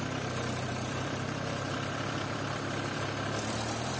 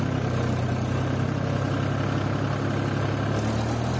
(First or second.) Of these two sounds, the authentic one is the second